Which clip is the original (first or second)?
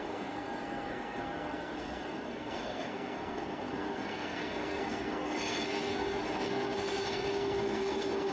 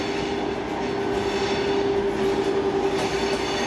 second